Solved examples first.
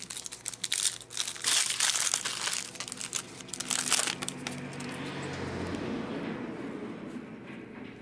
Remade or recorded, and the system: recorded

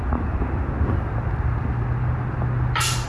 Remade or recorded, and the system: recorded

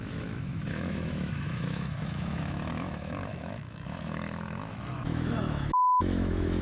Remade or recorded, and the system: remade, autoencoder, DAC-VAE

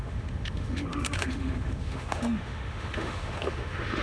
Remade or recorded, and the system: remade, autoencoder, DAC-VAE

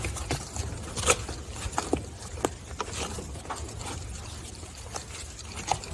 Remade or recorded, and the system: recorded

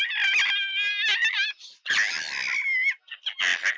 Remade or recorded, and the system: recorded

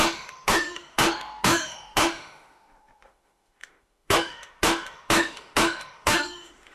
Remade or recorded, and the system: remade, autoencoder, DAC-VAE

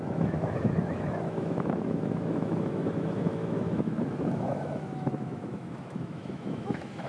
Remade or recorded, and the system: remade, autoencoder, DAC-VAE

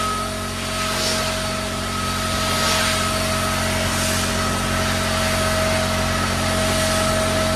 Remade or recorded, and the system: recorded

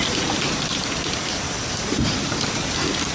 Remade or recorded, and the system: recorded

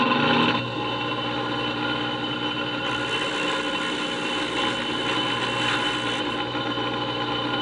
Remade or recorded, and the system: recorded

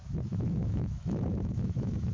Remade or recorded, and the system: remade, autoencoder, DAC-VAE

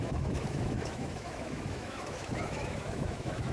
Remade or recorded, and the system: remade, autoencoder, DAC-VAE